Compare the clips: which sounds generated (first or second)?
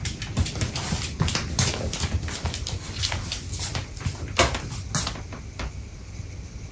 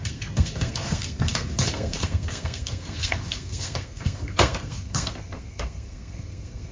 second